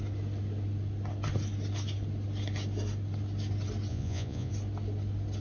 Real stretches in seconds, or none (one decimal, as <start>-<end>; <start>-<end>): 0.0-3.9; 4.5-5.4